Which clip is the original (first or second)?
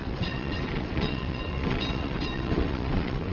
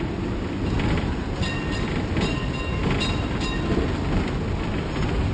second